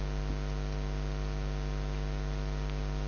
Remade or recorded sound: recorded